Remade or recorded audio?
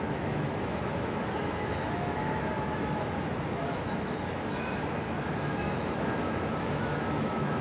remade